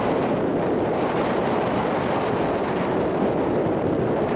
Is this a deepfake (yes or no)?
no